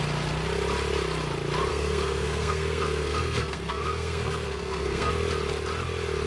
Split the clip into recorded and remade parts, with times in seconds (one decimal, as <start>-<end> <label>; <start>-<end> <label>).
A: 0.0-1.7 recorded; 1.7-5.1 remade; 5.1-6.3 recorded